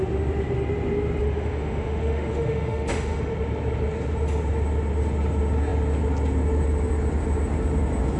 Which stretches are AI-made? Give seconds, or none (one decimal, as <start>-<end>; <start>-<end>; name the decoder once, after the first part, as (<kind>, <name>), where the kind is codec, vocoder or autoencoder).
1.2-3.2 (autoencoder, DAC-VAE)